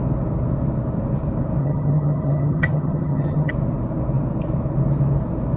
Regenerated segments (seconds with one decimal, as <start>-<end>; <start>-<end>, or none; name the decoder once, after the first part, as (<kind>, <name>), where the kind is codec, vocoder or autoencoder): 1.6-3.5 (vocoder, HiFi-GAN)